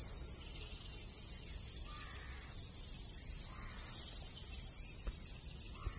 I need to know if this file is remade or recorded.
recorded